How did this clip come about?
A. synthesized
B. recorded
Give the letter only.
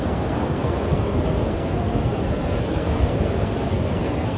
A